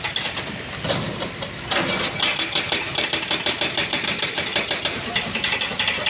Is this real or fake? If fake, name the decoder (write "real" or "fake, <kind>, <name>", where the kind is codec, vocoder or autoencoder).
real